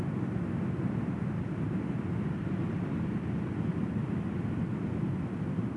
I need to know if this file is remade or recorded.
recorded